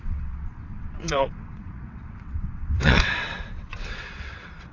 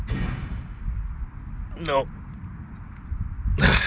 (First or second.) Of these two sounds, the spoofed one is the first